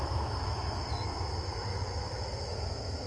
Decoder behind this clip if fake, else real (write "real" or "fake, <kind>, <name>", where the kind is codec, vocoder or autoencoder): fake, autoencoder, DAC-VAE